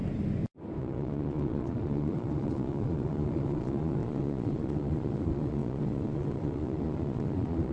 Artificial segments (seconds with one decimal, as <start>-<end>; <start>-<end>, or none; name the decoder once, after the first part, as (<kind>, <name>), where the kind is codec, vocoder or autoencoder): 0.8-7.7 (vocoder, Vocos)